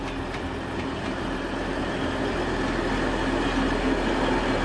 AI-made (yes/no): no